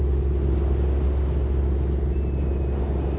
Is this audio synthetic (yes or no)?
no